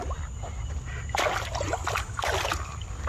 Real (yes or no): yes